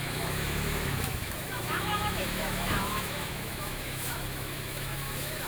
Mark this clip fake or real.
fake